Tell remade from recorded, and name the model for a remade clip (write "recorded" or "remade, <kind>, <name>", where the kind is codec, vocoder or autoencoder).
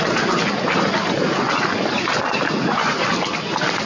recorded